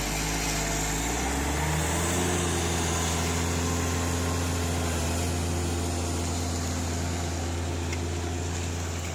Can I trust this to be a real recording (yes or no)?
yes